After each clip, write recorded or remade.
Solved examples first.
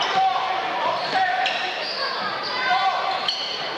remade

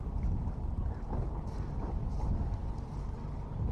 recorded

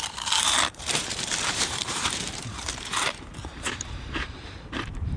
remade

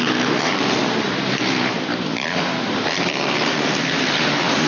remade